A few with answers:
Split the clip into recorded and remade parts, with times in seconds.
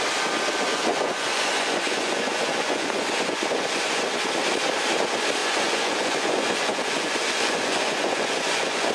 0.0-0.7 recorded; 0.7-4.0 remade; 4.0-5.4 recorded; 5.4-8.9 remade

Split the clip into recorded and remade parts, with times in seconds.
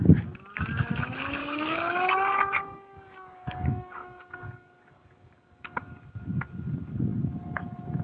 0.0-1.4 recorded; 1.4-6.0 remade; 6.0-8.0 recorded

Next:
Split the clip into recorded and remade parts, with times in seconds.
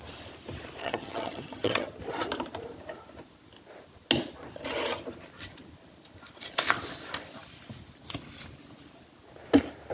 0.0-0.8 recorded; 0.8-2.0 remade; 2.0-9.9 recorded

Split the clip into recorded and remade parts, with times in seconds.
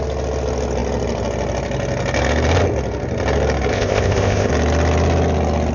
0.0-3.7 recorded; 3.7-4.5 remade; 4.5-5.7 recorded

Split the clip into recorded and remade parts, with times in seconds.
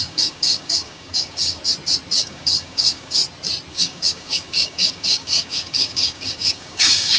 0.0-1.6 remade; 1.6-2.2 recorded; 2.2-3.2 remade; 3.2-3.7 recorded; 3.7-7.2 remade